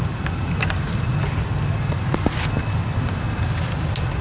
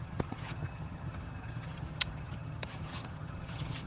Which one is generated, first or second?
second